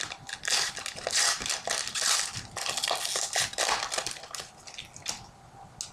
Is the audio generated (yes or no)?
no